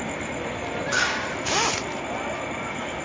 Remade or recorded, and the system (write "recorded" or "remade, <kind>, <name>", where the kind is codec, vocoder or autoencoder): recorded